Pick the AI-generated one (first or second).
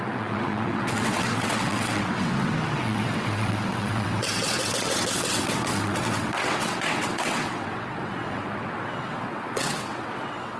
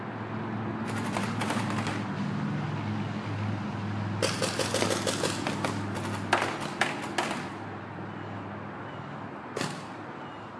first